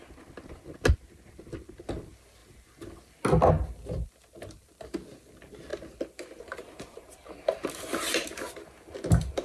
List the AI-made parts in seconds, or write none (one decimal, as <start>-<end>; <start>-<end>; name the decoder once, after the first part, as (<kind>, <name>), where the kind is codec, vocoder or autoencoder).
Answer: none